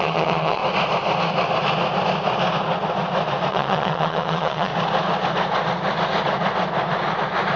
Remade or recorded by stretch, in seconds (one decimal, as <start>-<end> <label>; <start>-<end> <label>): 0.0-0.6 remade; 0.6-3.5 recorded; 3.5-4.7 remade; 4.7-7.6 recorded